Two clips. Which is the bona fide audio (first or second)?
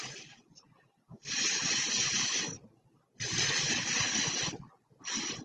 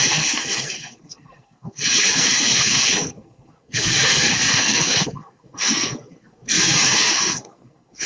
first